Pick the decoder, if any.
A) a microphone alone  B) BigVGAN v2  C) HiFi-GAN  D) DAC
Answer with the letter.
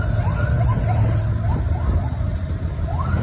A